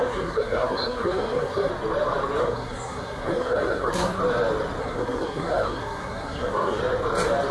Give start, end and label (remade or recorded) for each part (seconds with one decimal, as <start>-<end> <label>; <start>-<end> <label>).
0.0-1.7 remade; 1.7-2.4 recorded; 2.4-4.2 remade; 4.2-4.8 recorded; 4.8-6.8 remade; 6.8-7.5 recorded